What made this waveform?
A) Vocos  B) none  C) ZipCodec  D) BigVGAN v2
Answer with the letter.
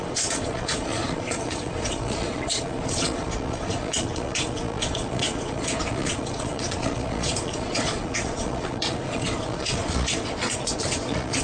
A